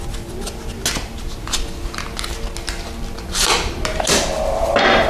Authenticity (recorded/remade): recorded